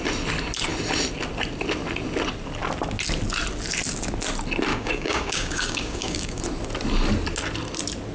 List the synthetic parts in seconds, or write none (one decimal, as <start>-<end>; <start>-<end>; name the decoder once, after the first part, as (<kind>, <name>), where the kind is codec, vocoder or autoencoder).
4.7-6.4 (codec, DAC)